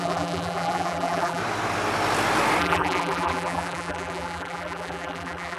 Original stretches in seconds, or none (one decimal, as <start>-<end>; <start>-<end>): 1.4-2.6